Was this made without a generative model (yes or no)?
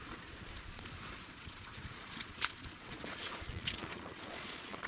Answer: no